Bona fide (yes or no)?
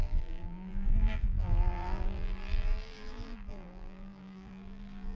no